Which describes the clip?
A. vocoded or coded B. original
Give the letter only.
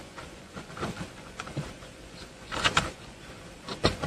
A